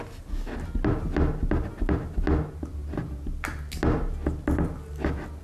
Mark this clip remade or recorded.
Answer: recorded